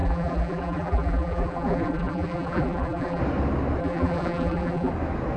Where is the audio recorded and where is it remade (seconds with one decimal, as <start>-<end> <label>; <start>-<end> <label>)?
0.0-3.2 remade; 3.2-3.8 recorded; 3.8-4.9 remade; 4.9-5.4 recorded